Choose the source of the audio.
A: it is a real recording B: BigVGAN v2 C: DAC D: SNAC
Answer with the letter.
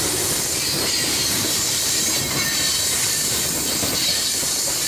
B